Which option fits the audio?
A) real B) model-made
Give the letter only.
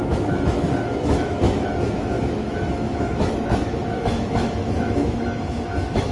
B